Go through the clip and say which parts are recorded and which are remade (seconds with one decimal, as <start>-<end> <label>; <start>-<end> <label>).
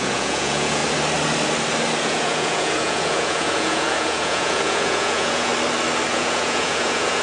0.0-0.8 remade; 0.8-2.0 recorded; 2.0-5.5 remade; 5.5-6.1 recorded; 6.1-7.2 remade